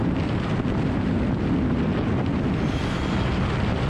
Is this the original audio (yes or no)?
yes